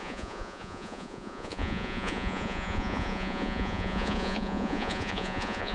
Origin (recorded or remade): remade